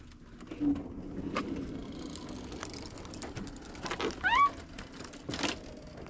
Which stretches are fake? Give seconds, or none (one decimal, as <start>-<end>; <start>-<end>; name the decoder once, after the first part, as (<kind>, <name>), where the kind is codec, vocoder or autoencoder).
none